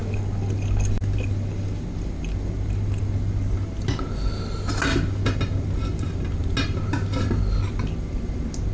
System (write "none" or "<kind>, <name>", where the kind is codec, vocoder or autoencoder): none